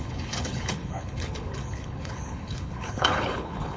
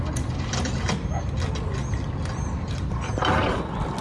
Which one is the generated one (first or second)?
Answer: first